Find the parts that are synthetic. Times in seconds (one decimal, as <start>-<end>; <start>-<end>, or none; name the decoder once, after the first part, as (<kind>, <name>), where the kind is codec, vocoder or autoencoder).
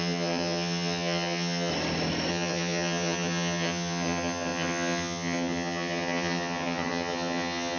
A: 0.0-1.7 (vocoder, HiFi-GAN); 2.3-7.8